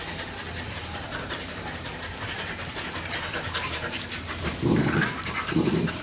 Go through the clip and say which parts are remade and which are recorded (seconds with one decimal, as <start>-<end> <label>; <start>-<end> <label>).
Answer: 0.0-1.2 recorded; 1.2-6.0 remade